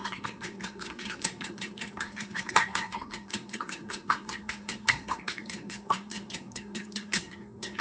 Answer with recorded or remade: remade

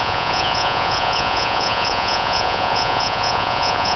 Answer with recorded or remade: remade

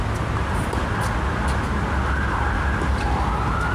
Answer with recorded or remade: recorded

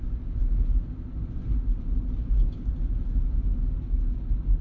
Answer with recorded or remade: recorded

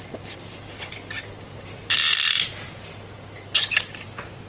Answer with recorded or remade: recorded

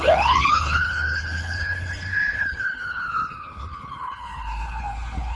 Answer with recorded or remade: remade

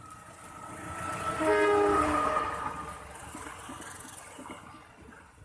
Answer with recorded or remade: recorded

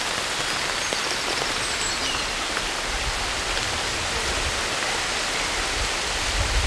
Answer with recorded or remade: recorded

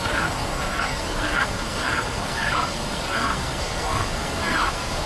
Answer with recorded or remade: remade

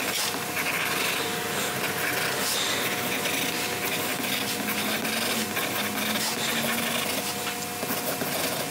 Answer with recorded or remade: recorded